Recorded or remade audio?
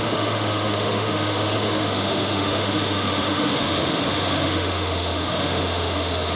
remade